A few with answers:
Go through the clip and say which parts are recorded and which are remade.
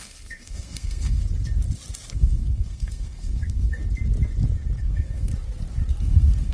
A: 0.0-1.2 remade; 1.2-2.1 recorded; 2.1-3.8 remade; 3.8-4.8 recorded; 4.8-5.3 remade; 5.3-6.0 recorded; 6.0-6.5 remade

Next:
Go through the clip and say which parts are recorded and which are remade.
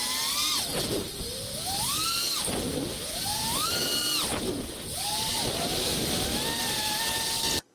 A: 0.0-7.7 recorded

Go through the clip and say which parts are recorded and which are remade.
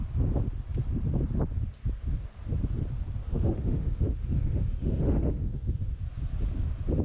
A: 0.0-3.2 recorded; 3.2-6.0 remade; 6.0-7.0 recorded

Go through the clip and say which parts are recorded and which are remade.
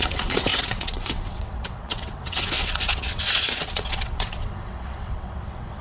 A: 0.0-5.8 remade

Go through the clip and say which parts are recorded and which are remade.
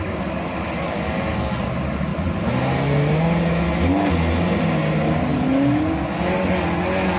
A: 0.0-7.2 recorded